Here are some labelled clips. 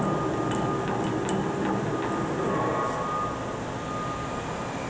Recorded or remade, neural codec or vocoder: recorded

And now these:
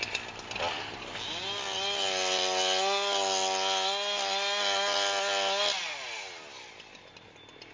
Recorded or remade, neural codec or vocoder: recorded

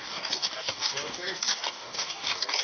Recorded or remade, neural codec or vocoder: remade, codec, DAC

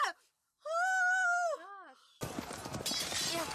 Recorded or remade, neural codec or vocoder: recorded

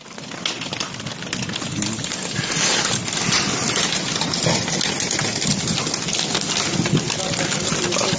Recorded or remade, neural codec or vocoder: recorded